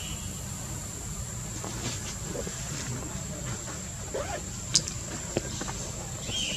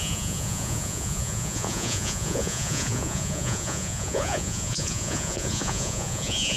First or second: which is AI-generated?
second